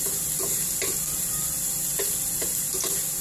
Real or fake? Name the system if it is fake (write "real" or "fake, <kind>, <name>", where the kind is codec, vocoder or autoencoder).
real